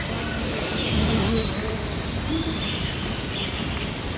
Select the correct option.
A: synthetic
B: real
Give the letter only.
B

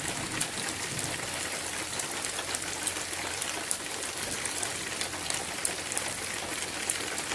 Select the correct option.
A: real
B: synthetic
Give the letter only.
B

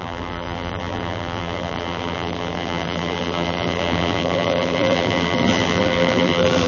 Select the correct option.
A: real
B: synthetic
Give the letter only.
B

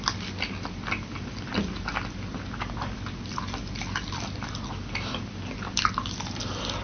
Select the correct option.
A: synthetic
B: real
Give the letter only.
B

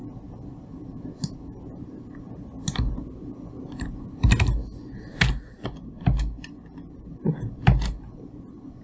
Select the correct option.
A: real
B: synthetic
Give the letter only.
A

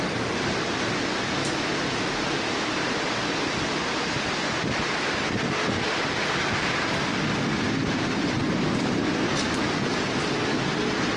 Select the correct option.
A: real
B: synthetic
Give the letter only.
B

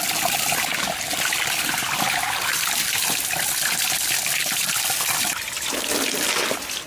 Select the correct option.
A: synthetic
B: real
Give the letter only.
B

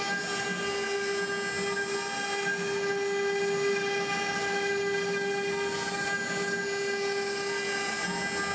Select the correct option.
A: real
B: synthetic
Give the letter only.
A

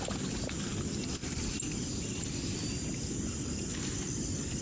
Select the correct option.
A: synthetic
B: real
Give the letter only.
B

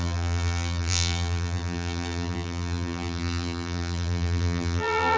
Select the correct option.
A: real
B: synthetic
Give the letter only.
B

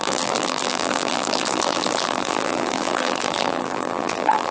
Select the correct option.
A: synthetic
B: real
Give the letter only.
A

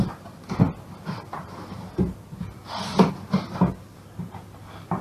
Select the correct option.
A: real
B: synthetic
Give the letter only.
A